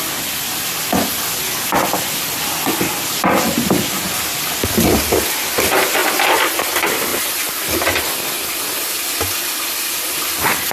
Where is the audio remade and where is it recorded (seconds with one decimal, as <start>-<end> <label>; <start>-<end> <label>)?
0.0-10.7 recorded